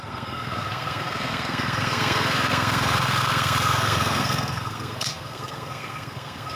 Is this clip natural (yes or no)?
no